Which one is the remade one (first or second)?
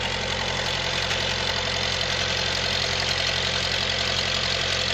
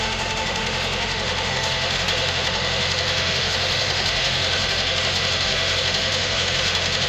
second